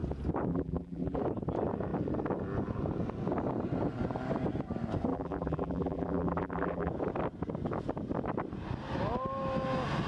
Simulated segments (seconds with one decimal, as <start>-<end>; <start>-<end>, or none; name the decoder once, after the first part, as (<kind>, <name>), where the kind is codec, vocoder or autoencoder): 0.5-1.2 (vocoder, BigVGAN v2); 5.1-6.9